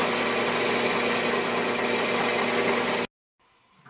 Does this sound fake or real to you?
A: real